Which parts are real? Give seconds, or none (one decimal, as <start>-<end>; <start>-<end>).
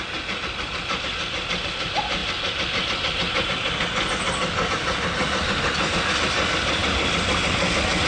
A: 0.0-8.1